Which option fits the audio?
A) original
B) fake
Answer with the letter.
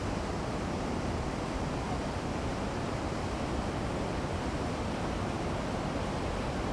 A